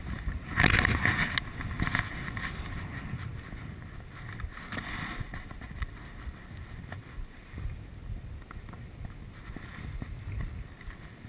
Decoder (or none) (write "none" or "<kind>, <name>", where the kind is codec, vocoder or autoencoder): none